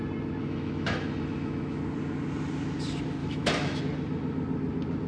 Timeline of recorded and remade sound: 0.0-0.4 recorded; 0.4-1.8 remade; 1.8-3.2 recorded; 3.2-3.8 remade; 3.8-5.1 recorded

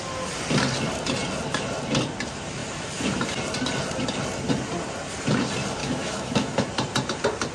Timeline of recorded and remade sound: 0.0-5.8 recorded; 5.8-6.7 remade; 6.7-7.5 recorded

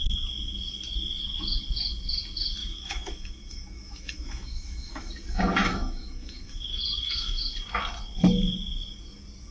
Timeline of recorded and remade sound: 0.0-2.6 recorded; 2.6-5.1 remade; 5.1-5.6 recorded; 5.6-7.4 remade; 7.4-9.5 recorded

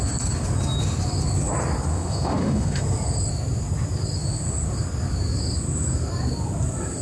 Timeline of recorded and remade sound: 0.0-1.9 recorded; 1.9-2.8 remade; 2.8-7.0 recorded

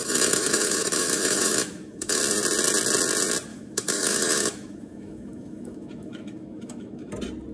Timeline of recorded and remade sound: 0.0-2.2 remade; 2.2-3.5 recorded; 3.5-7.1 remade; 7.1-7.5 recorded